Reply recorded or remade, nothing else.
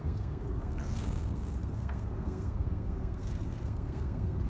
remade